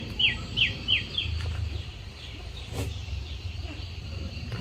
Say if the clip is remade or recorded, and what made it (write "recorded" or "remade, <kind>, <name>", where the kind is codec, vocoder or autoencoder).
remade, vocoder, BigVGAN v2